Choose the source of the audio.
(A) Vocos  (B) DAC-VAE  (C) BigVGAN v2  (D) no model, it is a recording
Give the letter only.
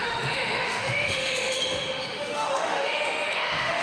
B